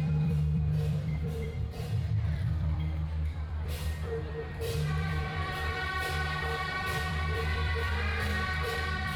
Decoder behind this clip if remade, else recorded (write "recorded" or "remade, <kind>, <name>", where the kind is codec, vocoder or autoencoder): remade, vocoder, BigVGAN v2